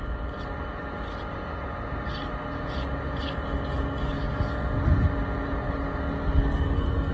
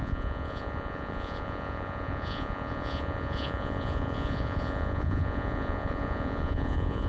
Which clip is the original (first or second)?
first